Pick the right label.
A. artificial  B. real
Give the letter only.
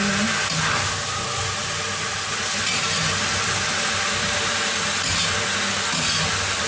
B